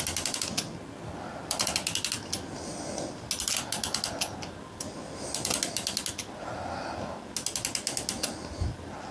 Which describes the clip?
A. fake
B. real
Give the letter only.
B